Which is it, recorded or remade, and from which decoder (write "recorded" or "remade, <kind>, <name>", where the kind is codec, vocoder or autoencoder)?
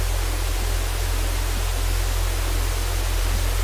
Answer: recorded